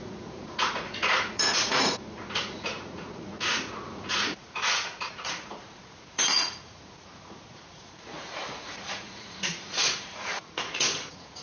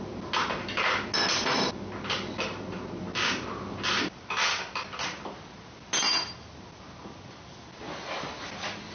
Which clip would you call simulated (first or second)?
first